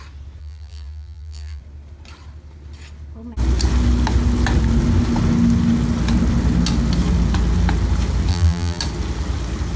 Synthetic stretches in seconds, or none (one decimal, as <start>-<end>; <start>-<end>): 0.4-1.6; 8.3-8.8